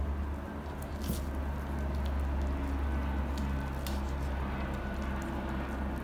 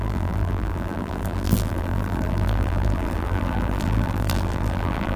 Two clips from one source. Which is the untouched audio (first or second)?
first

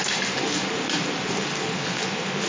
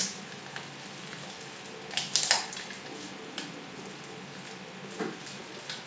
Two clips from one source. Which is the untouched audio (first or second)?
second